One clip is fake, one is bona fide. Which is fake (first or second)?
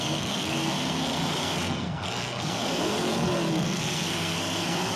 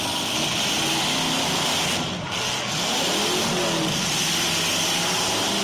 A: first